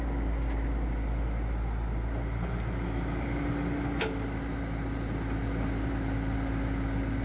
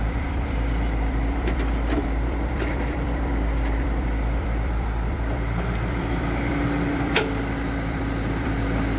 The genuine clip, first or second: first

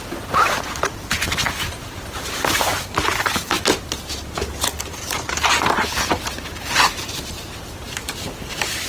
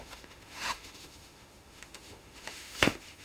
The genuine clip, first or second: first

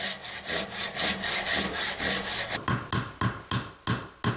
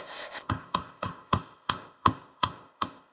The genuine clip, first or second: first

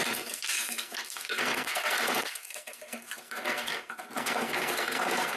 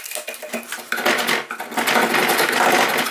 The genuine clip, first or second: second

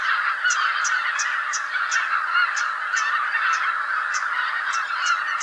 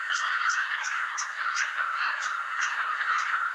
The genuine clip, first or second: first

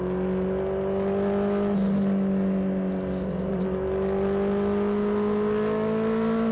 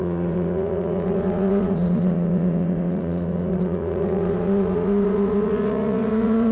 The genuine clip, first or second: first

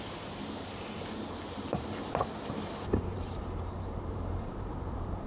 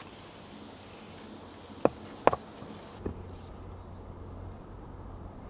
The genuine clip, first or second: second